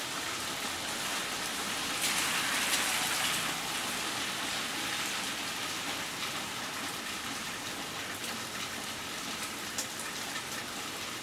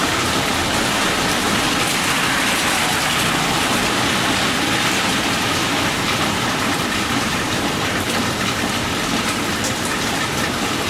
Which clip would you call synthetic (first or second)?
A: second